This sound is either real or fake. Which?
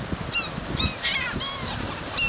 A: real